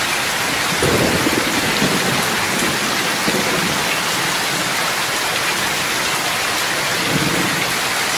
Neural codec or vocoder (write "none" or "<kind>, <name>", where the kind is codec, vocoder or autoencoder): none